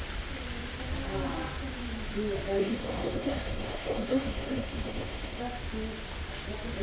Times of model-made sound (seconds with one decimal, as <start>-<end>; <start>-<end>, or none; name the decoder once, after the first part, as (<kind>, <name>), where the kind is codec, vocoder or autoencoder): 2.6-5.4 (codec, SNAC)